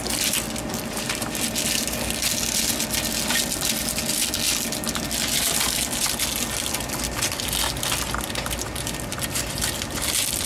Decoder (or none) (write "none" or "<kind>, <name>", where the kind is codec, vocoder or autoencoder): none